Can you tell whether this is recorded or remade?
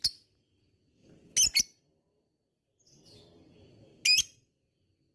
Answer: recorded